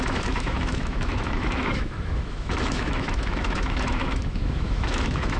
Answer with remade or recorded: remade